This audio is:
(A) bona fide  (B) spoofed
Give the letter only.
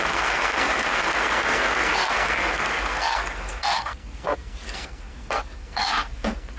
B